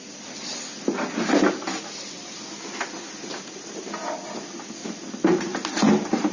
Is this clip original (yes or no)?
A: yes